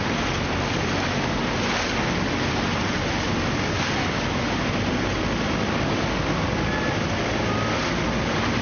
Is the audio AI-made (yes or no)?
no